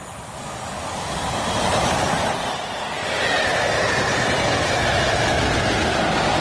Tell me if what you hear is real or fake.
real